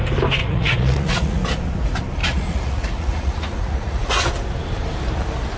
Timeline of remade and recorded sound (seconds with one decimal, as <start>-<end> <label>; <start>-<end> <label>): 0.0-0.4 recorded; 0.4-1.4 remade; 1.4-2.2 recorded; 2.2-4.2 remade; 4.2-5.6 recorded